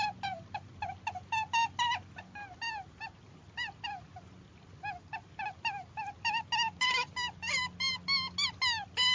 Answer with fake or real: real